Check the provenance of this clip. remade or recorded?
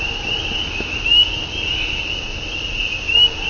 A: recorded